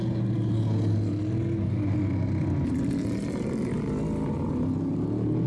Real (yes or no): yes